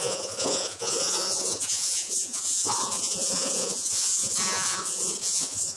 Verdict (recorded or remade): remade